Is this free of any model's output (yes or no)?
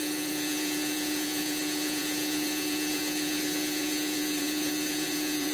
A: no